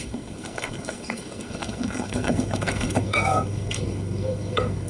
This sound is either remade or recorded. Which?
remade